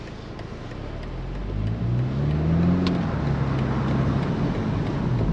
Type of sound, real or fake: real